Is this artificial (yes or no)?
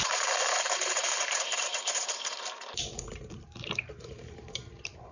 yes